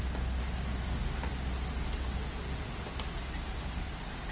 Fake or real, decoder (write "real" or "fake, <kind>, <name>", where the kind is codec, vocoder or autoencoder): real